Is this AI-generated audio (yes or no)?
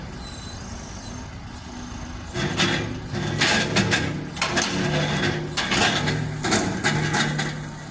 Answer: no